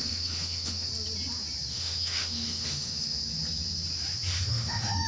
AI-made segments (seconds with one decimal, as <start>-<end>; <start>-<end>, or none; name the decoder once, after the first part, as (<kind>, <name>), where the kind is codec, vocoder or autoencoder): 0.0-0.9 (autoencoder, DAC-VAE); 1.7-3.2; 4.3-5.1